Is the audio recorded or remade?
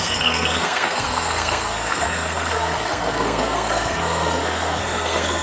remade